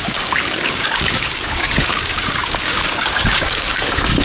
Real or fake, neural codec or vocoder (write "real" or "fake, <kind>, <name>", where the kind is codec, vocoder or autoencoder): fake, codec, DAC